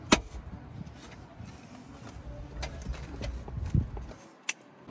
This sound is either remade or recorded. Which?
recorded